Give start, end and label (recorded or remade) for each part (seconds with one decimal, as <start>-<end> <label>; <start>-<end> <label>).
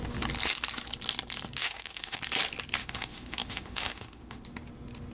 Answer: 0.0-1.6 recorded; 1.6-2.2 remade; 2.2-2.8 recorded; 2.8-4.4 remade; 4.4-5.1 recorded